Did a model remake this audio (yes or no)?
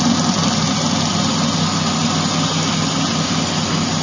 no